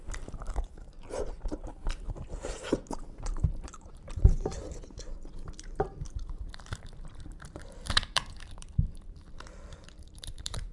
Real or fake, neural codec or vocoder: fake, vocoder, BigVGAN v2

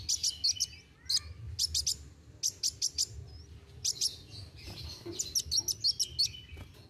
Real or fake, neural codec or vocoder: real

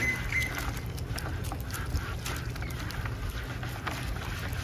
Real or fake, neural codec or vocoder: real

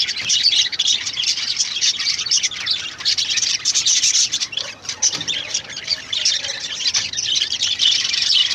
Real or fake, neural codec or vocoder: fake, vocoder, BigVGAN v2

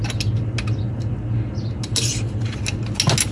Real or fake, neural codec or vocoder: real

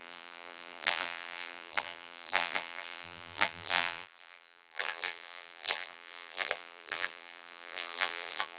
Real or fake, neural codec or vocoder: fake, vocoder, BigVGAN v2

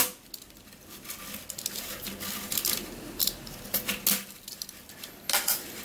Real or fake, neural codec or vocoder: real